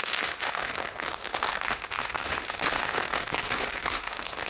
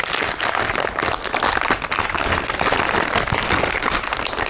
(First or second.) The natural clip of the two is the second